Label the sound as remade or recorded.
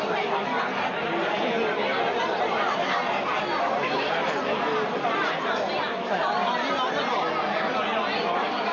recorded